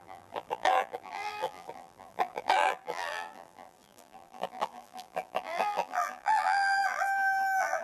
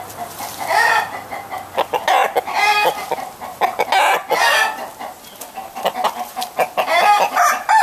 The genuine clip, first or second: second